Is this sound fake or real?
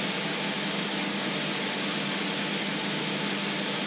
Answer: real